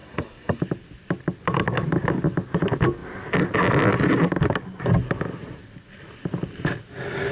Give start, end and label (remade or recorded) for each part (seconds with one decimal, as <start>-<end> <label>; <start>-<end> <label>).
0.0-0.6 remade; 0.6-7.3 recorded